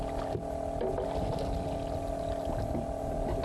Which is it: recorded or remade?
recorded